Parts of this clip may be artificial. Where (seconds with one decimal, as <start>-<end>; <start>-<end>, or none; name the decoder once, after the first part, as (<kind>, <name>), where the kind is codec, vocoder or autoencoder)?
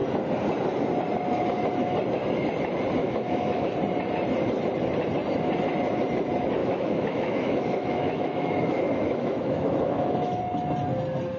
3.0-3.6 (autoencoder, DAC-VAE); 6.6-10.4